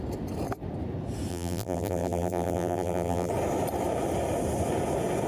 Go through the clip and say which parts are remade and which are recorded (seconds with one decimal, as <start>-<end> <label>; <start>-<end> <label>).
0.0-1.3 recorded; 1.3-3.3 remade; 3.3-5.3 recorded